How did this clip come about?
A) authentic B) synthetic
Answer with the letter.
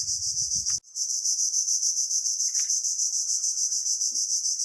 A